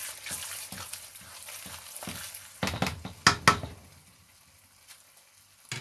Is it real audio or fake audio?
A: real